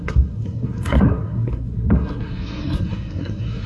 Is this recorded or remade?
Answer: remade